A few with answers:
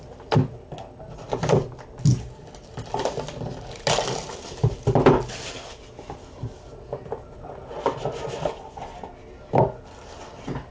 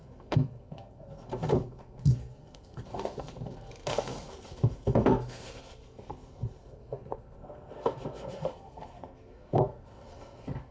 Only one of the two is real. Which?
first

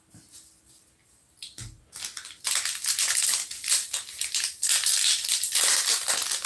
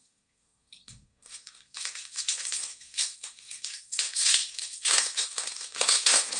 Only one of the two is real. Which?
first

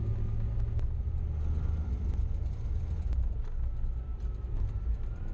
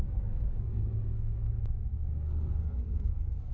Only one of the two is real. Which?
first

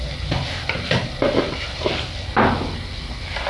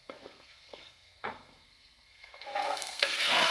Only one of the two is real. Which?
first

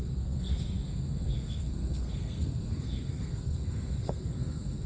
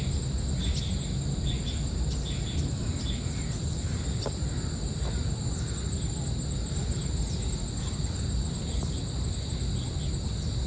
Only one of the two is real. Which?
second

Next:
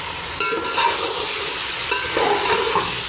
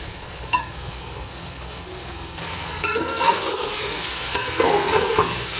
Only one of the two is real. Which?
first